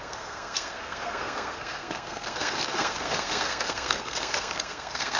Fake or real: fake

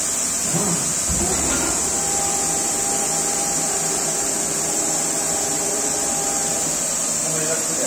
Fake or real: real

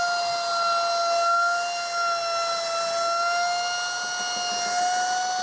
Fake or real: real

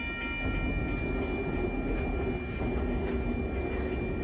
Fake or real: real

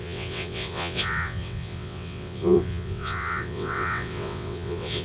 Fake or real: fake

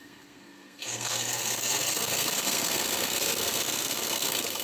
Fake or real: fake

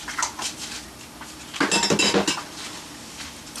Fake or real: real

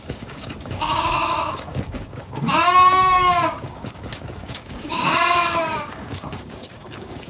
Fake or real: fake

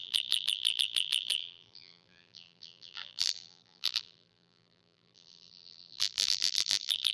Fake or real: fake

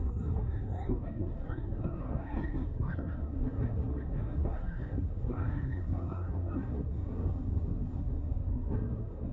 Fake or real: fake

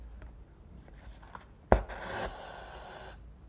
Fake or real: real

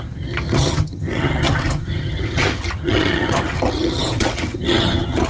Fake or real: fake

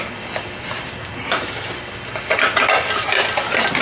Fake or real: real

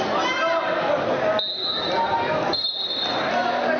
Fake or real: real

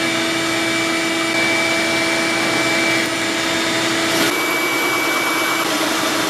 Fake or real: real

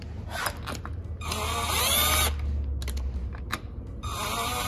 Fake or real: real